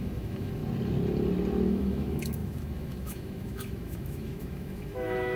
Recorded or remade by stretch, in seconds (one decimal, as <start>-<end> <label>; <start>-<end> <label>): 0.0-0.6 remade; 0.6-1.7 recorded; 1.7-5.4 remade